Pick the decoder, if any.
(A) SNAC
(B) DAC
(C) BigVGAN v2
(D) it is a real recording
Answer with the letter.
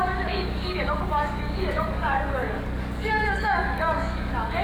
B